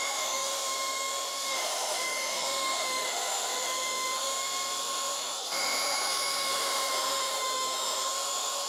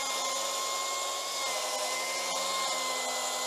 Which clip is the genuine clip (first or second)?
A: second